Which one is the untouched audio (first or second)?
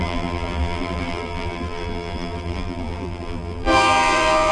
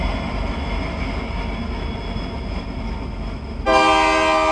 second